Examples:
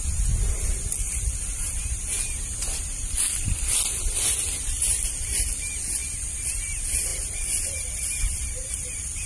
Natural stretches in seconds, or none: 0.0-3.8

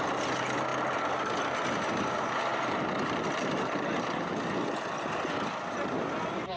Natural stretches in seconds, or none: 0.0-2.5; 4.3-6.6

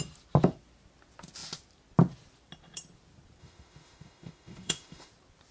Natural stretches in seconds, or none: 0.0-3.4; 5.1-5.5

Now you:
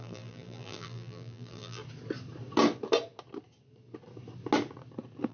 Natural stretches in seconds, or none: 1.8-5.3